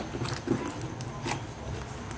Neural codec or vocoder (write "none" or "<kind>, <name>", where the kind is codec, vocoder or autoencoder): none